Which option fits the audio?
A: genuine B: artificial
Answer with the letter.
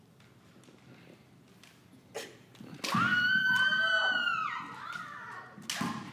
A